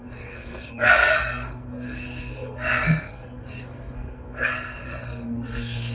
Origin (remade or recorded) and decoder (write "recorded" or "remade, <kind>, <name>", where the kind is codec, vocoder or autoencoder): remade, codec, SNAC